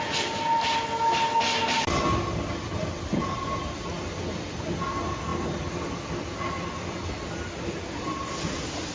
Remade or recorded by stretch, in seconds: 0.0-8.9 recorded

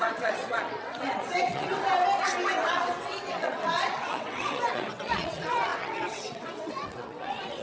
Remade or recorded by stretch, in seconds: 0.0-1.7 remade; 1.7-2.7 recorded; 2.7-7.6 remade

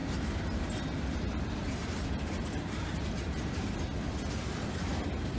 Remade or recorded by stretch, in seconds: 0.0-1.8 recorded; 1.8-3.6 remade; 3.6-5.4 recorded

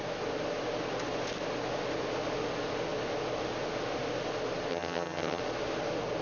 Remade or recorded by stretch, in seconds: 0.0-4.7 recorded; 4.7-5.4 remade; 5.4-6.2 recorded

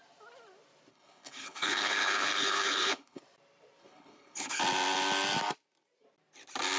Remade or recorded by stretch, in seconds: 0.0-0.9 recorded; 0.9-3.2 remade; 3.2-3.8 recorded; 3.8-4.6 remade; 4.6-6.8 recorded

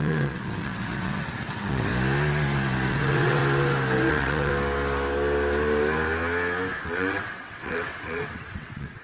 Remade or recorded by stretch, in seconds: 0.0-1.9 remade; 1.9-2.9 recorded; 2.9-3.4 remade; 3.4-4.1 recorded; 4.1-4.5 remade; 4.5-6.8 recorded; 6.8-9.0 remade

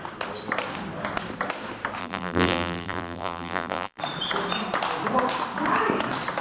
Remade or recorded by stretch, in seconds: 0.0-2.0 recorded; 2.0-4.0 remade; 4.0-6.4 recorded